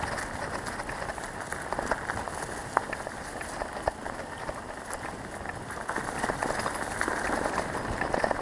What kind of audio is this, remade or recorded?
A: recorded